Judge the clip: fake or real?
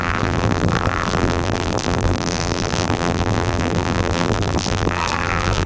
fake